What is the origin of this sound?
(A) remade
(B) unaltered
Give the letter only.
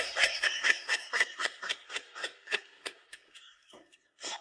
A